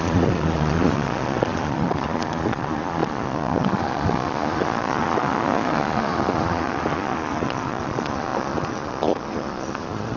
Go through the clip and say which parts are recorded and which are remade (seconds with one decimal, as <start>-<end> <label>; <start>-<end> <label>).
0.0-10.2 remade